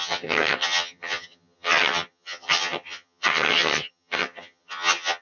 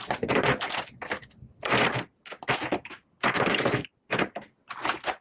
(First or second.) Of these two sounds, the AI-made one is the first